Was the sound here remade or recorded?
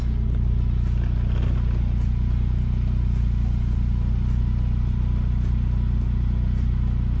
recorded